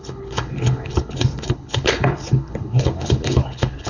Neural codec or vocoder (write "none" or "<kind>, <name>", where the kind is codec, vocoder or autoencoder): codec, HILCodec